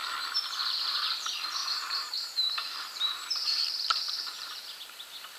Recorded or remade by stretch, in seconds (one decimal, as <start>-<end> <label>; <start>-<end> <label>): 0.0-1.6 recorded; 1.6-4.8 remade; 4.8-5.4 recorded